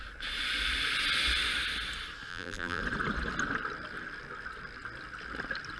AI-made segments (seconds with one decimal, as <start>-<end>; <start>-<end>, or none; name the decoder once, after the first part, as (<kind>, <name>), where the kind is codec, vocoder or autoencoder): 2.3-2.8 (vocoder, BigVGAN v2)